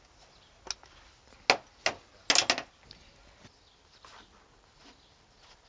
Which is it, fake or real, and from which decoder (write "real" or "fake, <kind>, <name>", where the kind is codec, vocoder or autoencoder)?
real